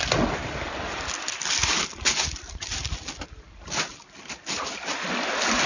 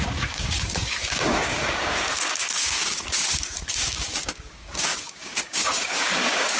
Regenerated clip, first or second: second